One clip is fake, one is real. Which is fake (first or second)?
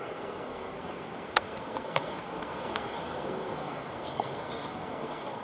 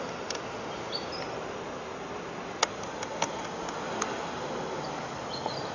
first